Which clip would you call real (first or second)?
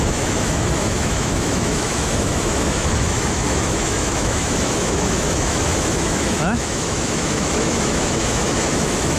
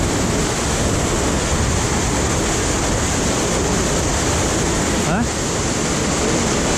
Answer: second